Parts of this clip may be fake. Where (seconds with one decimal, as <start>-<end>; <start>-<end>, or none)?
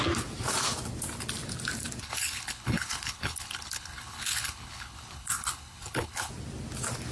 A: 2.0-6.3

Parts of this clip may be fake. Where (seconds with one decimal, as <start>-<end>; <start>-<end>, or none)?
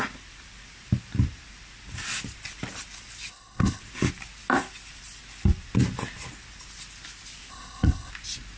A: 3.3-3.8; 7.5-8.1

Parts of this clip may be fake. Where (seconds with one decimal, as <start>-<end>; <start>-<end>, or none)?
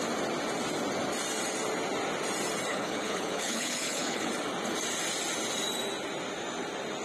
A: 2.7-4.3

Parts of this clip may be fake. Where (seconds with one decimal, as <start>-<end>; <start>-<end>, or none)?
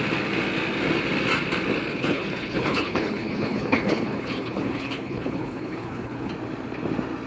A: 1.9-6.3